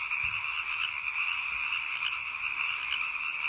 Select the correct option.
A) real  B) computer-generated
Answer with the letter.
A